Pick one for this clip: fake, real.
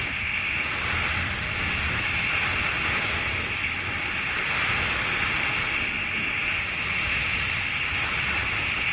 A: real